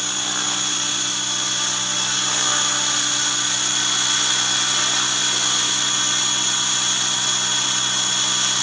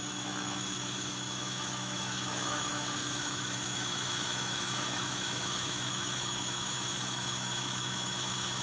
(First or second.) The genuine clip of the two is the first